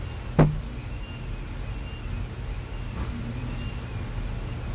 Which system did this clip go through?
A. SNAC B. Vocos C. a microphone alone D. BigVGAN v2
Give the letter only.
C